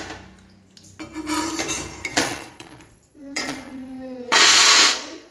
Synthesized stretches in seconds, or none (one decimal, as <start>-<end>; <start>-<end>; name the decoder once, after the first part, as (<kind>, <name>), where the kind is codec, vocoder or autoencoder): 2.1-5.3 (vocoder, Vocos)